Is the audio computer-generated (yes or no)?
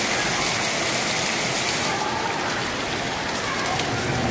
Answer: no